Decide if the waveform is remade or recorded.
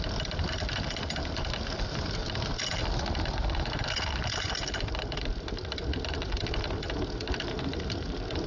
recorded